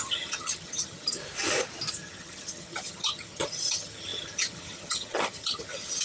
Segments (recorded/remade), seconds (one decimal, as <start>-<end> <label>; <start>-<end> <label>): 0.0-1.2 remade; 1.2-1.9 recorded; 1.9-6.0 remade